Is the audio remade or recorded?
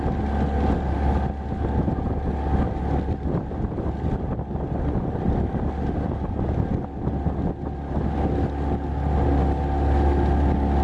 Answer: recorded